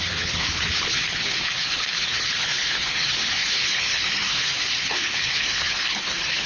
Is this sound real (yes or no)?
no